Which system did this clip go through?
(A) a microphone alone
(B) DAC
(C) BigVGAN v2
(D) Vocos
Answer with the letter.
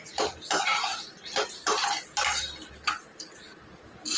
A